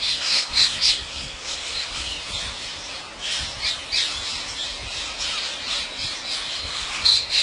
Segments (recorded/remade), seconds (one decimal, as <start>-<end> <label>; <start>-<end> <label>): 0.0-2.1 remade; 2.1-6.5 recorded; 6.5-7.4 remade